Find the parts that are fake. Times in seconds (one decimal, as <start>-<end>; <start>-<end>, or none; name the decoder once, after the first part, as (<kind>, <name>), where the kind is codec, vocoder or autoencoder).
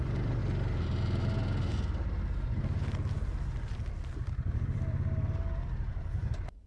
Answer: 0.0-0.4 (vocoder, BigVGAN v2); 4.4-6.7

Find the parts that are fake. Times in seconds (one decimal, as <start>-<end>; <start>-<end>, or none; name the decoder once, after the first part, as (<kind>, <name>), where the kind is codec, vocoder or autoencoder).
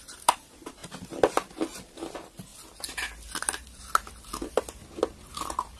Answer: none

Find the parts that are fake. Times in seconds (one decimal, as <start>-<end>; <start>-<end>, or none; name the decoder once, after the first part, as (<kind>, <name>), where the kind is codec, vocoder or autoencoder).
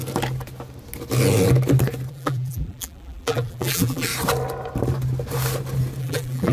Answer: 2.1-4.1 (vocoder, BigVGAN v2); 6.0-6.5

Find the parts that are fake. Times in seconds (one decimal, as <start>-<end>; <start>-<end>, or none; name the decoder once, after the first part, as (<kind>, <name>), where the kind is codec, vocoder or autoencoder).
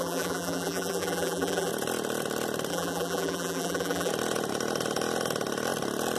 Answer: 0.0-1.7 (vocoder, BigVGAN v2); 2.7-4.1